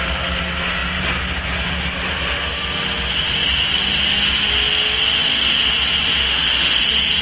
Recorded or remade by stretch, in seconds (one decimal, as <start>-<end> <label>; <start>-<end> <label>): 0.0-6.2 recorded; 6.2-6.8 remade; 6.8-7.2 recorded